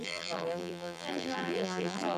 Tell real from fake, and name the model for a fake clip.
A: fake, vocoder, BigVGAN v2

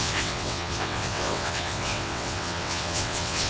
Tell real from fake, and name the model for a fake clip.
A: fake, vocoder, WaveNeXt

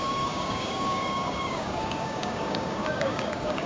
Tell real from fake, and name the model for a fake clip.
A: fake, codec, DAC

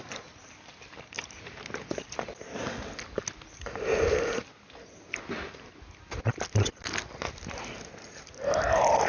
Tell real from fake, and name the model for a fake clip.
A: real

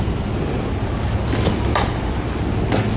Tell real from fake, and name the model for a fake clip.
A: real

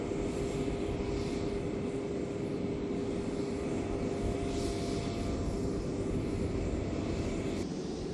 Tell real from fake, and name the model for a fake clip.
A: real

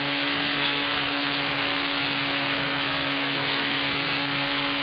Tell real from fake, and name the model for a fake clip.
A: fake, codec, SNAC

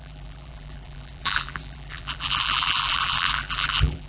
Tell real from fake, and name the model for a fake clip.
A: fake, vocoder, BigVGAN v2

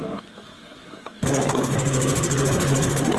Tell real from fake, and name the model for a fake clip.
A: fake, codec, SNAC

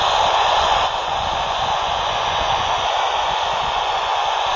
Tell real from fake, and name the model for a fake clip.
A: fake, vocoder, Vocos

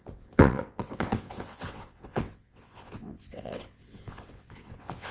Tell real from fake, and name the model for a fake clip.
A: fake, vocoder, WaveNeXt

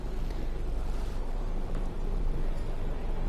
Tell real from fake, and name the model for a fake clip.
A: fake, vocoder, BigVGAN v2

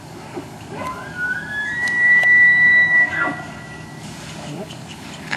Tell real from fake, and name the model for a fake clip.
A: fake, codec, DAC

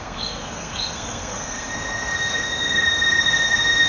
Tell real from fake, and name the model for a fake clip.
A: fake, codec, SNAC